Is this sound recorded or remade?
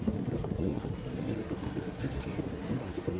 remade